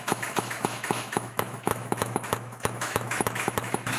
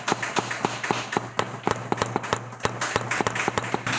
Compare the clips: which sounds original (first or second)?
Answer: second